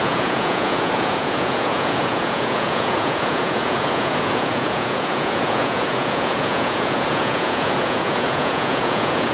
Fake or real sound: fake